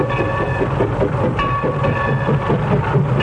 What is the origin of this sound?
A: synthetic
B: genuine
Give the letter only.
B